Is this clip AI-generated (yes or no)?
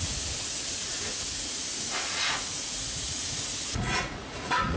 yes